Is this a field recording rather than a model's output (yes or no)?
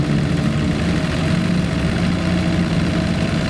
yes